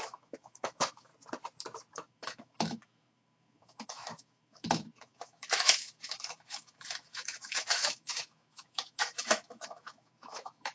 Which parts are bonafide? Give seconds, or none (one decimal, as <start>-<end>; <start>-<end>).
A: 1.1-1.9